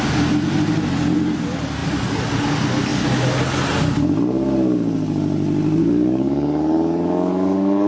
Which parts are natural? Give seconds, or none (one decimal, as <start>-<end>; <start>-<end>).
0.0-5.8

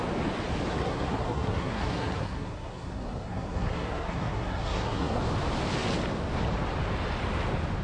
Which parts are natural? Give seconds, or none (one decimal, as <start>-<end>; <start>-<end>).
0.0-0.7; 5.2-7.8

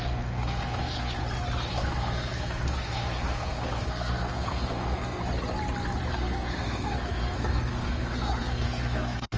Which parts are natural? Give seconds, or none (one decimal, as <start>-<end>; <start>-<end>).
1.2-1.7; 5.2-6.1

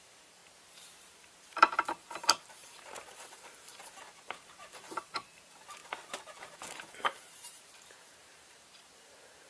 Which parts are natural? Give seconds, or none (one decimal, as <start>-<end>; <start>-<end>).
0.4-1.0; 5.8-6.4